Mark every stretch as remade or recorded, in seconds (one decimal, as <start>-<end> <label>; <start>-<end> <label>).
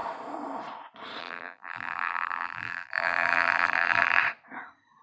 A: 0.0-1.2 recorded; 1.2-4.2 remade; 4.2-5.0 recorded